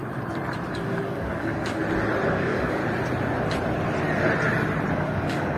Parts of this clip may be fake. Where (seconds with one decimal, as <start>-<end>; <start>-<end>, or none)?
0.7-1.8; 2.3-2.8; 4.9-5.6

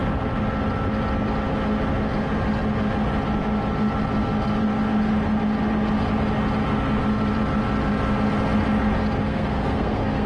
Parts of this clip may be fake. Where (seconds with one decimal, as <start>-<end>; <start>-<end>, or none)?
9.3-10.3

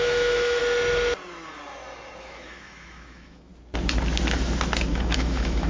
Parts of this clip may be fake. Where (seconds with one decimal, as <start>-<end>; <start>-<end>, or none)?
0.0-0.6; 2.2-3.5; 4.9-5.7

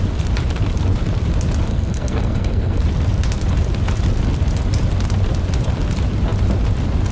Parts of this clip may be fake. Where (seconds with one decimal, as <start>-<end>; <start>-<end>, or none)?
1.7-2.8

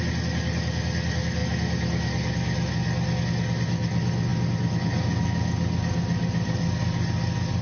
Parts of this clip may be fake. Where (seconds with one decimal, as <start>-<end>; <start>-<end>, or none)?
none

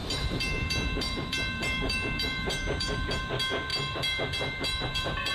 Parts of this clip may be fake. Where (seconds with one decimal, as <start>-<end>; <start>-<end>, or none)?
0.0-3.2; 3.7-5.3

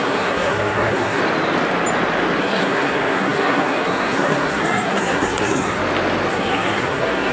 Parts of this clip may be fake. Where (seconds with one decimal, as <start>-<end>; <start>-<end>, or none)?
0.0-1.2; 2.4-5.8; 6.3-7.3